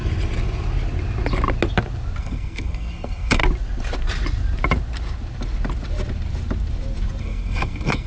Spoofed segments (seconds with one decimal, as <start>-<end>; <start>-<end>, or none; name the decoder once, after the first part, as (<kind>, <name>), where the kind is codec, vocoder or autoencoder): 2.2-3.4 (codec, SNAC); 7.2-8.1